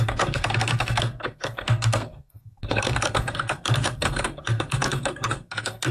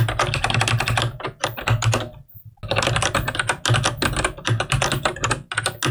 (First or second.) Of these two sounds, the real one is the second